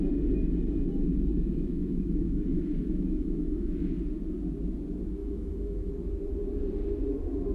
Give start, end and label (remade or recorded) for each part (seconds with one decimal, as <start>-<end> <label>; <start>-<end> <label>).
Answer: 0.0-1.5 recorded; 1.5-3.9 remade; 3.9-5.2 recorded; 5.2-5.9 remade; 5.9-7.5 recorded